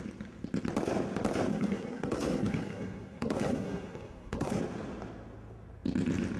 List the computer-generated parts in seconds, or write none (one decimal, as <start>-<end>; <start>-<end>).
1.5-4.6